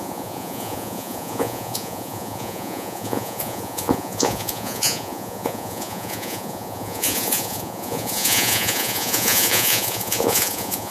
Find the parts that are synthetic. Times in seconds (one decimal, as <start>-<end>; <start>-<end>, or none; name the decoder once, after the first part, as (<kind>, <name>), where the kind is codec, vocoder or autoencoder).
0.0-10.9 (vocoder, Vocos)